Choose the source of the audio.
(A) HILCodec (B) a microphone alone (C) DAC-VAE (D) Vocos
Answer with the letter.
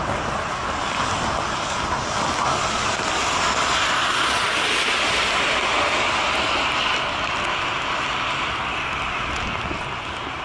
B